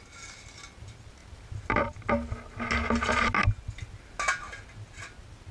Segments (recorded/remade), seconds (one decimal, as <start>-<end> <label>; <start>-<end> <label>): 0.0-5.5 recorded

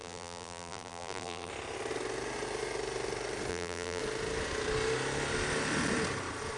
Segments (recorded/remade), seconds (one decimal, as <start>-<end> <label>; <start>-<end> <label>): 0.0-1.5 remade; 1.5-3.5 recorded; 3.5-4.0 remade; 4.0-6.6 recorded

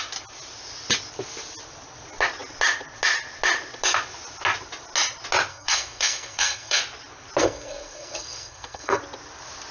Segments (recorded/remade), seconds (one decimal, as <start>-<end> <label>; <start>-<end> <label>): 0.0-5.5 recorded; 5.5-6.8 remade; 6.8-7.4 recorded; 7.4-9.0 remade; 9.0-9.7 recorded

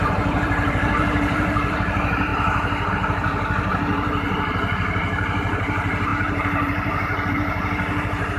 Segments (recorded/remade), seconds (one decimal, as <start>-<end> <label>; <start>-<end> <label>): 0.0-2.3 remade; 2.3-2.9 recorded; 2.9-8.4 remade

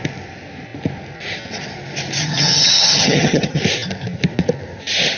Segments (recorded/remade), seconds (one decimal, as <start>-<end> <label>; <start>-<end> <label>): 0.0-2.2 recorded; 2.2-3.6 remade; 3.6-5.2 recorded

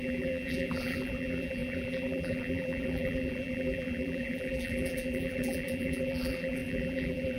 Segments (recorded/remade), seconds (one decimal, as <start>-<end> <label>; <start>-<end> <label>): 0.0-7.4 remade

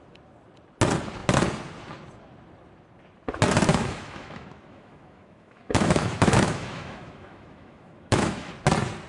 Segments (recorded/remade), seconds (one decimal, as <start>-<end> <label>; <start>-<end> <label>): 0.0-3.7 recorded; 3.7-8.5 remade; 8.5-9.1 recorded

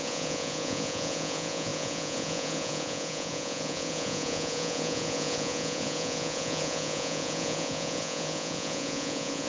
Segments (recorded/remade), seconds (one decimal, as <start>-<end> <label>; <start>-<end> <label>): 0.0-9.5 remade